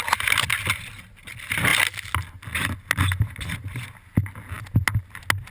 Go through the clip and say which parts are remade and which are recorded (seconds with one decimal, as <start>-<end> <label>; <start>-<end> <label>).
0.0-5.5 recorded